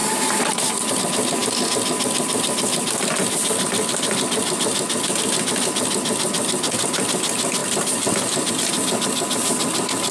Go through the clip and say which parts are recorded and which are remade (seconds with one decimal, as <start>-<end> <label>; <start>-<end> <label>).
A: 0.0-10.1 recorded